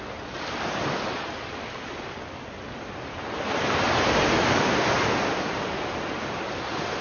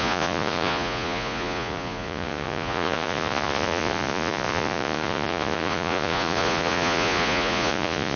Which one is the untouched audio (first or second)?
first